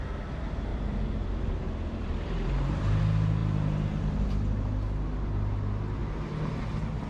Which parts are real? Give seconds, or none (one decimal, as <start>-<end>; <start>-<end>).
0.0-0.7; 3.0-7.1